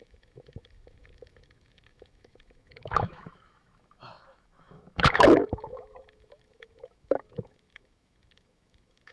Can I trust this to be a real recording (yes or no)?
no